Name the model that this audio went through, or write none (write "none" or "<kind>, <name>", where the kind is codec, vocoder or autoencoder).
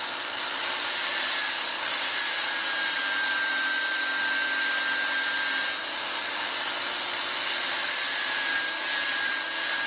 none